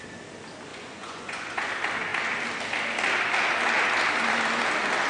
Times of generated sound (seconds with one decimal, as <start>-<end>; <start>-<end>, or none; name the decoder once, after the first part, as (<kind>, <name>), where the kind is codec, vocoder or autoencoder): 0.7-1.7 (vocoder, Vocos)